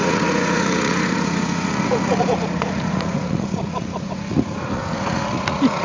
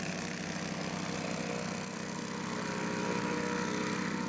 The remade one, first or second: first